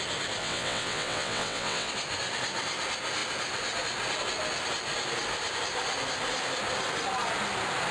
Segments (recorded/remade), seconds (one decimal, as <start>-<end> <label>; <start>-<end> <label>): 0.0-0.4 recorded; 0.4-1.9 remade; 1.9-7.9 recorded